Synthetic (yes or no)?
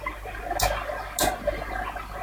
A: no